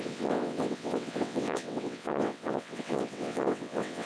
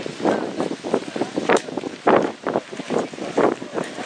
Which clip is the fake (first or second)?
first